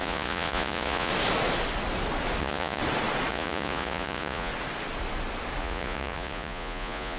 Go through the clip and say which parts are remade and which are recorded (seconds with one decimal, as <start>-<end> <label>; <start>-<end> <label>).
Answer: 0.0-1.1 remade; 1.1-2.4 recorded; 2.4-2.8 remade; 2.8-3.3 recorded; 3.3-4.5 remade; 4.5-5.6 recorded; 5.6-7.2 remade